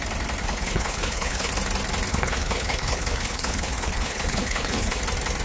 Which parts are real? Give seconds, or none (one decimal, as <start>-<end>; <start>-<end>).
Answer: 0.0-0.4; 1.5-2.1; 5.0-5.4